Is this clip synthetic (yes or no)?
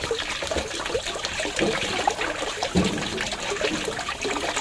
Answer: no